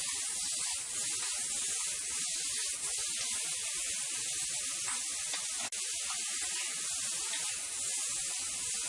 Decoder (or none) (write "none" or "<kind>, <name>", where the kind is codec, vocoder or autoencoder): none